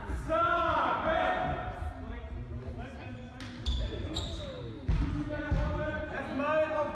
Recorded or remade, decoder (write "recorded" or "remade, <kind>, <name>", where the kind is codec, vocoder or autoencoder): recorded